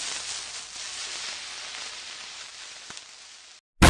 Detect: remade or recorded recorded